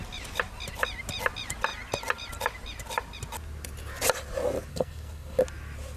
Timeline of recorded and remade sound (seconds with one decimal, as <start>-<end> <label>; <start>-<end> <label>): 0.0-4.7 recorded; 4.7-5.4 remade; 5.4-6.0 recorded